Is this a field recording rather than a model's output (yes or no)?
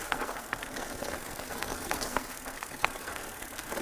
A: no